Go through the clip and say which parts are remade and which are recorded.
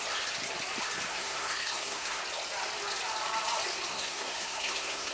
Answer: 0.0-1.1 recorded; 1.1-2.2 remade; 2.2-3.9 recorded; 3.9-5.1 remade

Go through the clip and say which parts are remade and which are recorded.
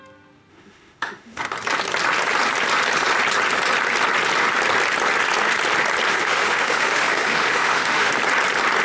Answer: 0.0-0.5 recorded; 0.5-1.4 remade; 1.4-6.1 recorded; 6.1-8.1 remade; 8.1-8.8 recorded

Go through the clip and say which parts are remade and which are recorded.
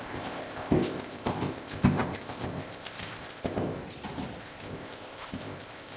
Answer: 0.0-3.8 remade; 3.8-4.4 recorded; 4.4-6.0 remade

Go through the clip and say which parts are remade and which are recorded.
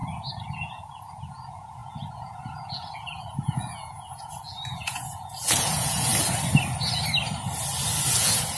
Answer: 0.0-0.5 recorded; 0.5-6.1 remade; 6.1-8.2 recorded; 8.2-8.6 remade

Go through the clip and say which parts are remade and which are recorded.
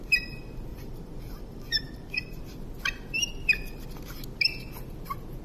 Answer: 0.0-0.7 recorded; 0.7-2.4 remade; 2.4-5.4 recorded